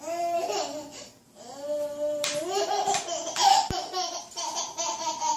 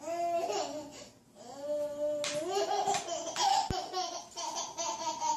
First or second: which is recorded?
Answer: second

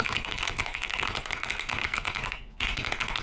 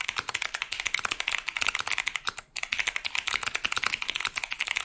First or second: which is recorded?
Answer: second